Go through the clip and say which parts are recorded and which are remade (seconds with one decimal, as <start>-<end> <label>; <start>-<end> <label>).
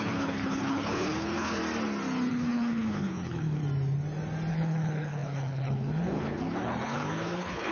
0.0-1.6 remade; 1.6-2.3 recorded; 2.3-3.6 remade; 3.6-4.5 recorded; 4.5-7.7 remade